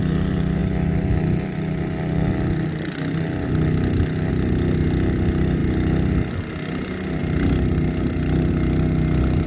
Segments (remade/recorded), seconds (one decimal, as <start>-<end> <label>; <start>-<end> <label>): 0.0-9.5 recorded